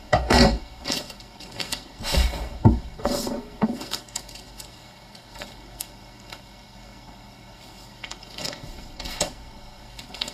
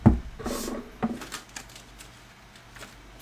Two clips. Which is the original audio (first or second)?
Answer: second